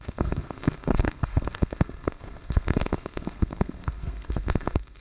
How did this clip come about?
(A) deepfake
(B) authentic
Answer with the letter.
A